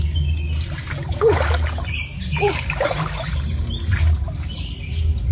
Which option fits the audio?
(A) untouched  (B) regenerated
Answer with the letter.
A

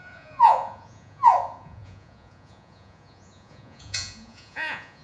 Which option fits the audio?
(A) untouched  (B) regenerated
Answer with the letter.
B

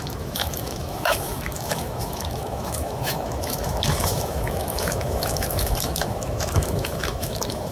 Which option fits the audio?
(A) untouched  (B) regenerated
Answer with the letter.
B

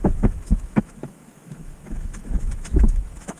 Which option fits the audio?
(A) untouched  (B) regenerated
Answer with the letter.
B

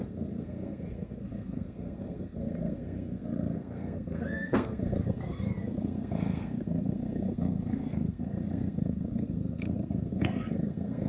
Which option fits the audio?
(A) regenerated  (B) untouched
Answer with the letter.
A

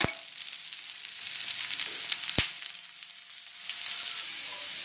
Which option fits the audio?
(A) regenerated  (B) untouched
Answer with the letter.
B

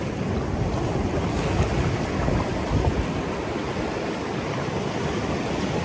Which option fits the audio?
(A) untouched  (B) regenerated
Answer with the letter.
A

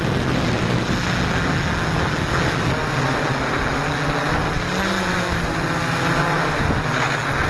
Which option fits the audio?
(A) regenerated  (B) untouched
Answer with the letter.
B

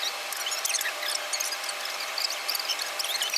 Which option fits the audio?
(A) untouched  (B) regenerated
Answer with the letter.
A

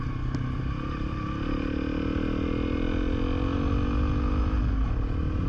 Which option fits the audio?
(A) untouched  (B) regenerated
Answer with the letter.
A